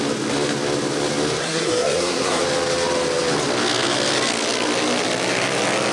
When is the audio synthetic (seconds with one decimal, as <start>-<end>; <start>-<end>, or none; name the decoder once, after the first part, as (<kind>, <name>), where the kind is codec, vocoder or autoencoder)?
1.4-2.4 (codec, SNAC)